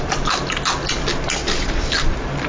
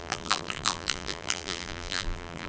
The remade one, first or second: second